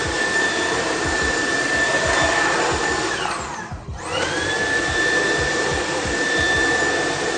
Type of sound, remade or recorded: remade